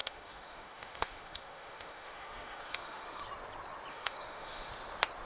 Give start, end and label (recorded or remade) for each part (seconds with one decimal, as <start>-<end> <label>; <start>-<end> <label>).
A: 0.0-3.2 remade; 3.2-3.9 recorded; 3.9-4.7 remade; 4.7-5.3 recorded